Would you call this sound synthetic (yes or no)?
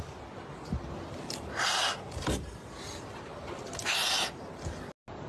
no